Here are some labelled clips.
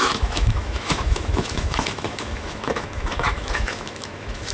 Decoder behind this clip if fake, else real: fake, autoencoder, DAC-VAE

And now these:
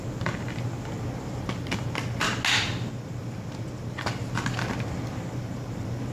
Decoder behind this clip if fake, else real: real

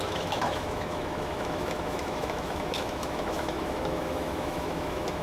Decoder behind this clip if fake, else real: fake, autoencoder, DAC-VAE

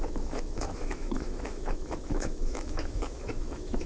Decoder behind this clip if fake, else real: fake, autoencoder, DAC-VAE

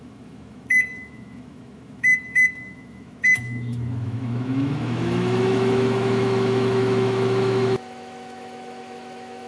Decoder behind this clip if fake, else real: fake, autoencoder, DAC-VAE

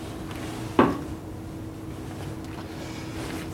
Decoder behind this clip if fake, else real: real